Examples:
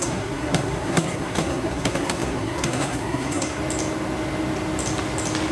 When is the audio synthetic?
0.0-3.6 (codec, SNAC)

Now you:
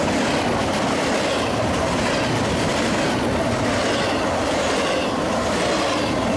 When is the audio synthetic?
0.6-2.1 (vocoder, BigVGAN v2)